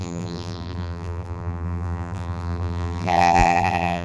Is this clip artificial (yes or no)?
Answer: yes